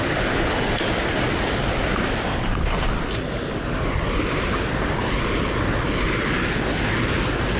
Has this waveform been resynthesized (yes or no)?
no